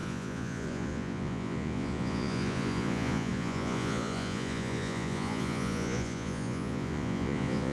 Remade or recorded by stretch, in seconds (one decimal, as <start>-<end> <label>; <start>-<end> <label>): 0.0-7.7 remade